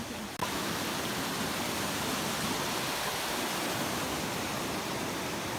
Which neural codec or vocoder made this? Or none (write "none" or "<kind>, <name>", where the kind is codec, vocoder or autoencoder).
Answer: none